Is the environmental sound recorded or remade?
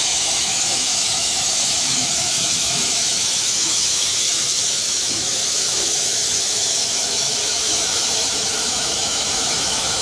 remade